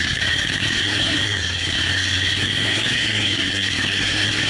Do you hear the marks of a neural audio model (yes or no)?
yes